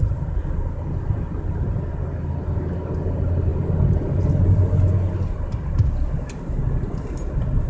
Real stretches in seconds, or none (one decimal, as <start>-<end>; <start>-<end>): 0.0-7.7